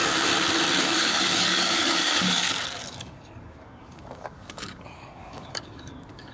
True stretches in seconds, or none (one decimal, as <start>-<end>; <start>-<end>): 0.0-0.8